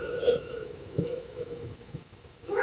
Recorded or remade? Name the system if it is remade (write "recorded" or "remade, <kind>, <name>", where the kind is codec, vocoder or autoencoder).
remade, autoencoder, DAC-VAE